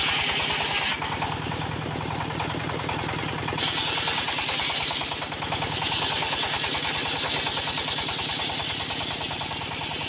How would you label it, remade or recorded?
recorded